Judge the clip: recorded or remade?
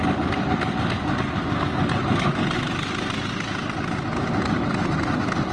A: recorded